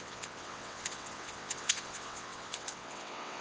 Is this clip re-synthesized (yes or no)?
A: yes